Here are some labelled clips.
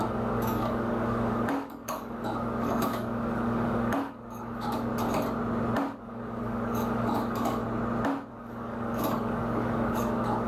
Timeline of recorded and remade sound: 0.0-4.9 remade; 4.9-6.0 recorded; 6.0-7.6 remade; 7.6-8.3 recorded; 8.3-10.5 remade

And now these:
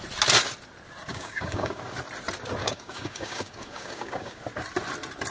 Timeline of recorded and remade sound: 0.0-1.1 recorded; 1.1-1.8 remade; 1.8-2.6 recorded; 2.6-4.4 remade; 4.4-5.3 recorded

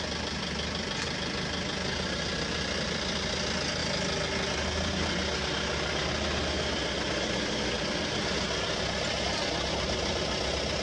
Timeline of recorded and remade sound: 0.0-10.8 recorded